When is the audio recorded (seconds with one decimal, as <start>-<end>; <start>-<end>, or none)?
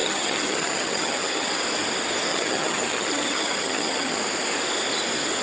1.5-2.3; 4.2-5.4